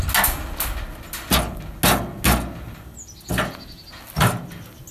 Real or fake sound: real